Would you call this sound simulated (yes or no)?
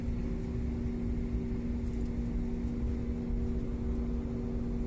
no